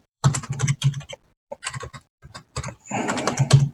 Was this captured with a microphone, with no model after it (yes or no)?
no